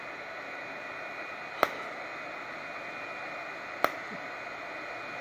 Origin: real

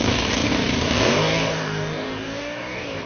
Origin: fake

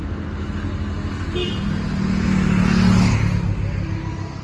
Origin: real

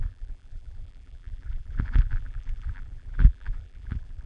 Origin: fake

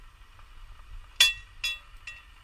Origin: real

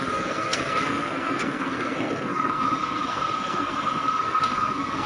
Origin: fake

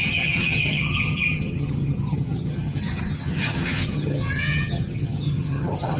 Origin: fake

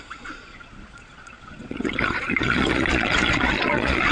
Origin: fake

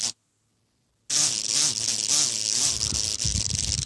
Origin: real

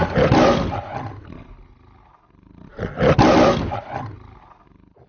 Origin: real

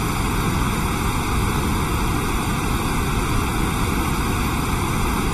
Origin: real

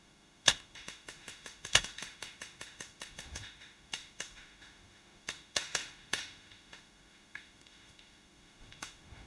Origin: fake